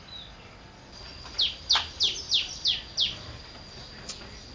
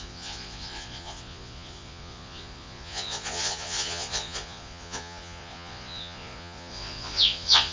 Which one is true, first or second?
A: first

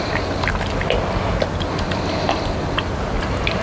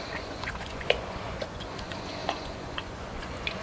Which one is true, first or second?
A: first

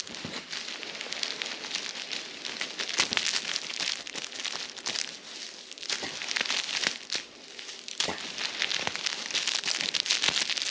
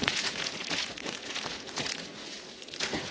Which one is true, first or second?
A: first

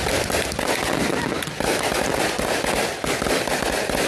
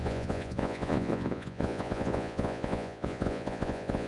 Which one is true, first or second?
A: first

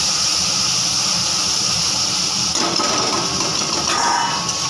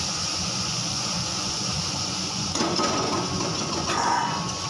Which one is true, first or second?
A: first